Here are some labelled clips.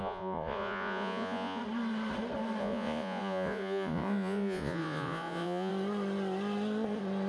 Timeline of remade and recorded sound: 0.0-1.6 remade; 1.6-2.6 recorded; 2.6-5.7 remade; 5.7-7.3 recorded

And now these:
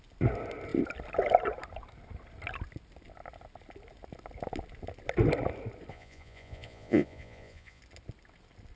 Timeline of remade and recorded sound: 0.0-5.9 recorded; 5.9-7.8 remade; 7.8-8.8 recorded

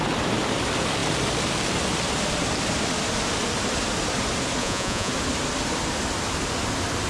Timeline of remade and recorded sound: 0.0-4.6 recorded; 4.6-5.1 remade; 5.1-7.1 recorded

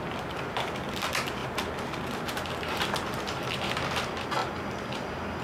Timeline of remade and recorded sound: 0.0-5.4 recorded